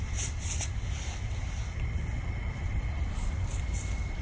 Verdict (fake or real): real